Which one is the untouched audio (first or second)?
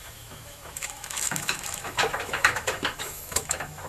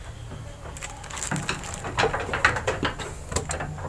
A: second